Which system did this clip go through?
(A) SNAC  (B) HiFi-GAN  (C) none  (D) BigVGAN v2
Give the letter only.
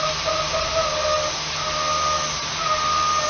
C